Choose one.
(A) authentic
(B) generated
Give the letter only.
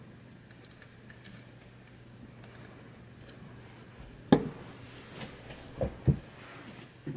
A